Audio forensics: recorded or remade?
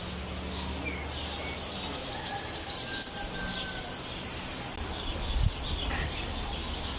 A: recorded